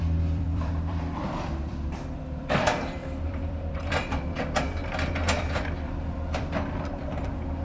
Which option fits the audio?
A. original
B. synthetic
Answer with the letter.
B